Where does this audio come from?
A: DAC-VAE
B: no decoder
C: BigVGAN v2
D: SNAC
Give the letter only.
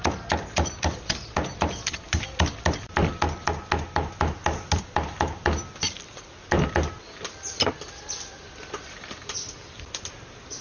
B